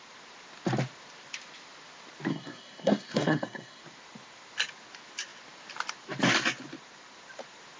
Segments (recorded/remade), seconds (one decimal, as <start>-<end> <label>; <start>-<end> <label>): 0.0-2.3 recorded; 2.3-3.8 remade; 3.8-7.8 recorded